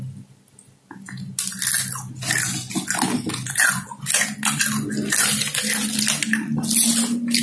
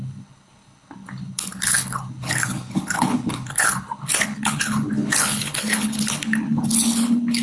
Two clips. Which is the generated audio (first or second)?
second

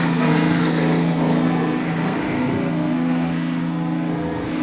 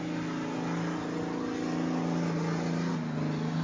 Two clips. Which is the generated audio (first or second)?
first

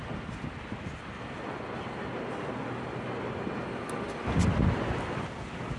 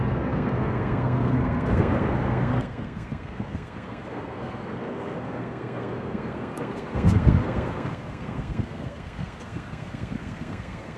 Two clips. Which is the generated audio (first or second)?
second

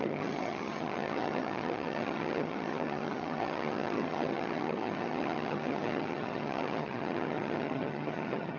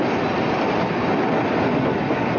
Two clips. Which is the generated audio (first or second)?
first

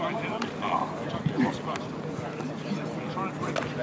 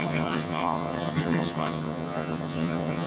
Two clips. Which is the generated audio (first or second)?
second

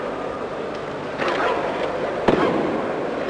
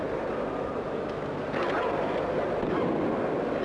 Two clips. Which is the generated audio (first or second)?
first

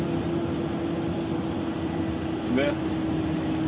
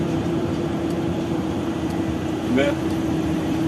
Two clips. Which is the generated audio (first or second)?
second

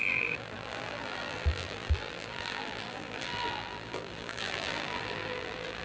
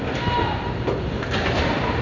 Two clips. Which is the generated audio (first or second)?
first